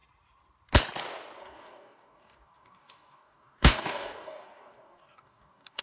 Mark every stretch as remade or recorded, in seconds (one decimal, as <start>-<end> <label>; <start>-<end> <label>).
0.0-1.4 recorded; 1.4-5.8 remade